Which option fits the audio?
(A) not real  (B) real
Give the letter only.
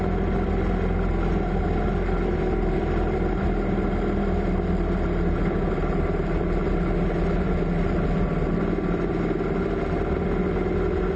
B